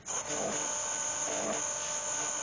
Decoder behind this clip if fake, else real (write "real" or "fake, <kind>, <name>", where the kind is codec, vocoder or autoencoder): real